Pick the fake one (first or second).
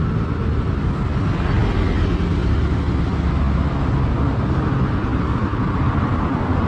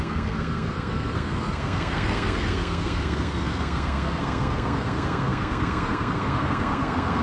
second